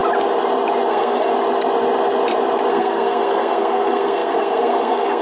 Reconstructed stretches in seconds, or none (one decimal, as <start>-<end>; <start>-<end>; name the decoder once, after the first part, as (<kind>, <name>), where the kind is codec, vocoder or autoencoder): 0.9-1.3 (codec, SNAC); 2.7-5.2